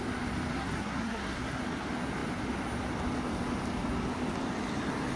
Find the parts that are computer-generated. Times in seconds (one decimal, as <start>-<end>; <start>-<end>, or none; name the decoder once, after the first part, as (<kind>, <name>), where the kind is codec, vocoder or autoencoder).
0.5-1.6 (codec, SNAC)